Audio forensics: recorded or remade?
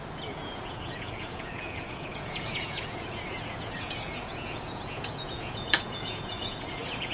remade